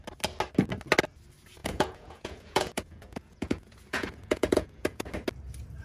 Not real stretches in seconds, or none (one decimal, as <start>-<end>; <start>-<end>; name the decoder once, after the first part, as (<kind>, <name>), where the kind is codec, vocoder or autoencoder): 1.6-5.1 (vocoder, Vocos)